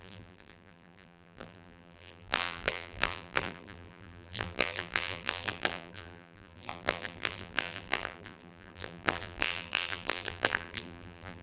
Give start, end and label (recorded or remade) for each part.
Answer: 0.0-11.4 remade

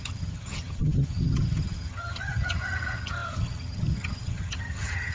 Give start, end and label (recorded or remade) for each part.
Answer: 0.0-5.1 remade

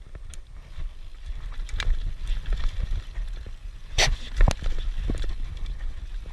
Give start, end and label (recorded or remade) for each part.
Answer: 0.0-3.6 recorded; 3.6-4.1 remade; 4.1-6.3 recorded

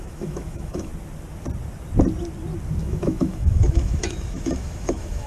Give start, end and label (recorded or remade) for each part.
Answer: 0.0-0.9 remade; 0.9-2.8 recorded; 2.8-5.3 remade

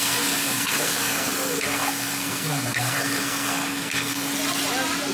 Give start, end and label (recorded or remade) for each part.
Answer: 0.0-4.3 remade; 4.3-5.1 recorded

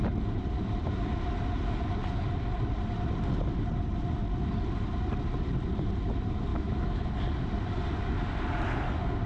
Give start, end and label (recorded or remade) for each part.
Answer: 0.0-6.5 recorded; 6.5-7.1 remade; 7.1-9.3 recorded

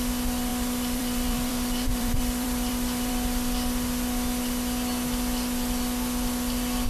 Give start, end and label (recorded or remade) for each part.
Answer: 0.0-0.5 recorded; 0.5-3.1 remade; 3.1-6.9 recorded

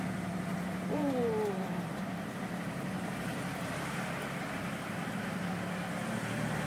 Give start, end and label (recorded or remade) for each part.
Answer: 0.0-0.5 recorded; 0.5-4.2 remade; 4.2-6.7 recorded